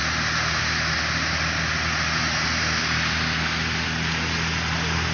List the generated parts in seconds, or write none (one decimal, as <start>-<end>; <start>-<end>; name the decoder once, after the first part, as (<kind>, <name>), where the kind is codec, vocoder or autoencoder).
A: none